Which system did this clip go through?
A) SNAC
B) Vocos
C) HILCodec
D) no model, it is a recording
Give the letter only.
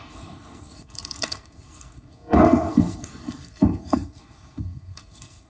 A